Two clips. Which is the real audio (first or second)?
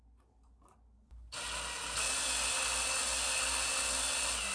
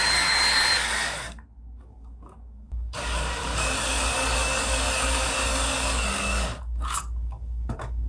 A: first